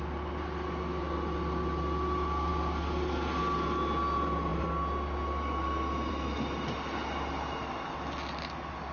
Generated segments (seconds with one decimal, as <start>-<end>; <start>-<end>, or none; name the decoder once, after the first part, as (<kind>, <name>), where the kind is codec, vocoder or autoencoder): none